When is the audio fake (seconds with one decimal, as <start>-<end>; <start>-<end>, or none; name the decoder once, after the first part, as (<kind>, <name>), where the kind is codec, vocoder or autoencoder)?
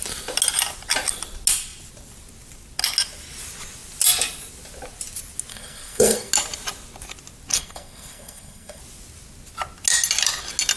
5.5-6.3 (codec, SNAC); 7.5-8.8